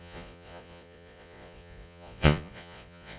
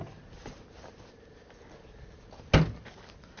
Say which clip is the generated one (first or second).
first